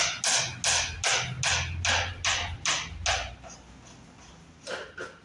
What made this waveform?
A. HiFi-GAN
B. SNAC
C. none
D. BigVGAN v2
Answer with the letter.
C